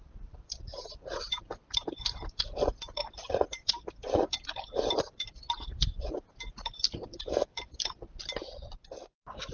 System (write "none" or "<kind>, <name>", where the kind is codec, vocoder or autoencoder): vocoder, BigVGAN v2